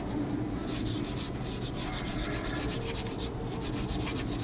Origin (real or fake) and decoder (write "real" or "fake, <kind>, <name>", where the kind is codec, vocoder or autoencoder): real